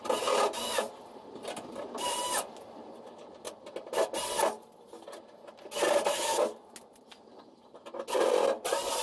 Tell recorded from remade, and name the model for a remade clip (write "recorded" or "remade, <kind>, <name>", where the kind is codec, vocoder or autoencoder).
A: recorded